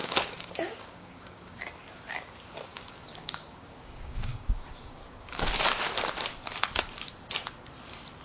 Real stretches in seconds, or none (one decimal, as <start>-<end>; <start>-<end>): 1.6-2.7; 5.6-8.2